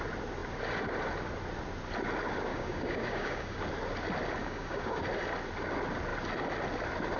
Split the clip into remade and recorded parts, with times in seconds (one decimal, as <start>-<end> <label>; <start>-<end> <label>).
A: 0.0-2.5 recorded; 2.5-3.6 remade; 3.6-4.4 recorded; 4.4-5.0 remade; 5.0-7.2 recorded